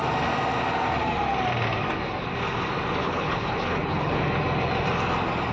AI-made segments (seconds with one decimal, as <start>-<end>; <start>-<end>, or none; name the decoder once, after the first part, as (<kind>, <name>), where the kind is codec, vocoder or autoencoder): 3.0-4.2 (codec, HILCodec)